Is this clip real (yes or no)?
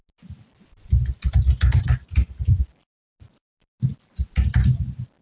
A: yes